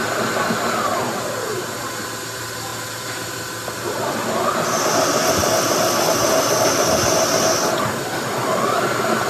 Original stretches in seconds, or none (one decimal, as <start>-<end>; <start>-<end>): 0.0-9.3